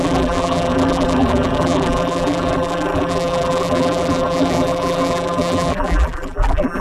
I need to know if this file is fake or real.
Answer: fake